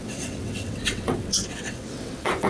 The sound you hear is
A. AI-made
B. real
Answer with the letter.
A